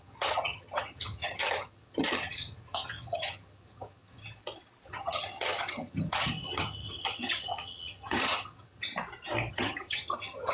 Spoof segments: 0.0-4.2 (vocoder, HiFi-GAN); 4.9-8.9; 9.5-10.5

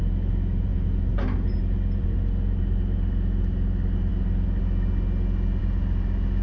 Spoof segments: none

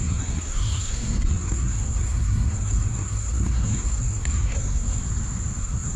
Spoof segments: 0.0-5.0 (codec, SNAC); 5.6-6.0

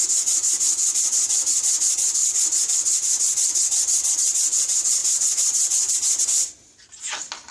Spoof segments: 5.0-5.9 (vocoder, BigVGAN v2)

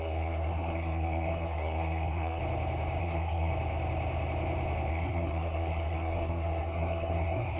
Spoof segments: 0.0-2.4 (codec, SNAC); 3.0-3.5; 4.9-7.6

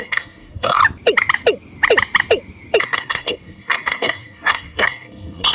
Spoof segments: 0.0-0.8 (codec, SNAC); 2.8-5.5

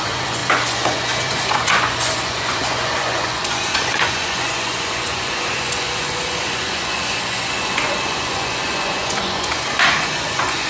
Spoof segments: 0.0-10.7 (vocoder, Vocos)

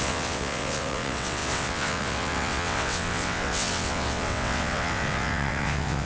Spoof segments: 0.0-6.1 (vocoder, WaveNeXt)